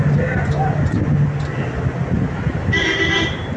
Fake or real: real